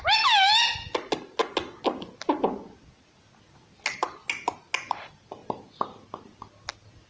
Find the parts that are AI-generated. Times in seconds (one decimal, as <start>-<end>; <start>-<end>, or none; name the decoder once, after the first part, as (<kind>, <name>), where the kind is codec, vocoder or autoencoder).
none

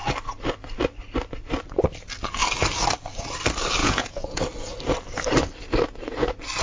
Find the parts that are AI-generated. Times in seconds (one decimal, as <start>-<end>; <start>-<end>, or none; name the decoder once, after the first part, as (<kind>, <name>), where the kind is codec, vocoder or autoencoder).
3.8-4.4 (vocoder, Vocos)

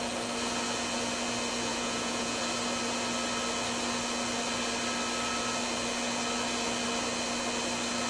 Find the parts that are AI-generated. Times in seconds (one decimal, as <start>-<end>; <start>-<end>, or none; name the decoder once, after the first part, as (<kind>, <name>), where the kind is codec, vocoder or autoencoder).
1.7-2.4 (vocoder, Vocos)

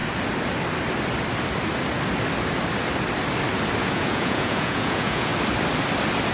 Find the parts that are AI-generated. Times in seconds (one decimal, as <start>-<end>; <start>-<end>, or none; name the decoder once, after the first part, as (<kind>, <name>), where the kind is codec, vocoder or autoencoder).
3.8-5.3 (vocoder, Vocos)

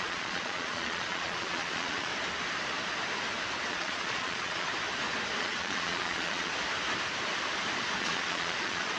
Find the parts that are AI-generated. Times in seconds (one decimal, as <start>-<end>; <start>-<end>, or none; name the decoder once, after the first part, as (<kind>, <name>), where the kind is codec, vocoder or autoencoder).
0.0-2.1 (vocoder, Vocos); 3.7-4.7; 5.4-6.5; 8.0-9.0

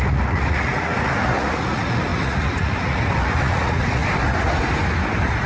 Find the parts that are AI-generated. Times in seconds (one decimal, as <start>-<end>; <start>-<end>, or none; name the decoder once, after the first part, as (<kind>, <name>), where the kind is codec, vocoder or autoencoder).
0.0-4.0 (vocoder, Vocos)

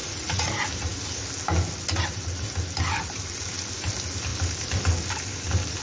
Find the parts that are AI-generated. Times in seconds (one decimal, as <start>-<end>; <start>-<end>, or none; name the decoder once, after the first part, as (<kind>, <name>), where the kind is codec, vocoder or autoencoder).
0.0-0.5 (vocoder, Vocos)